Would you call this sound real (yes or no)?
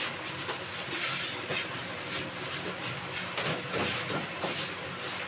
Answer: yes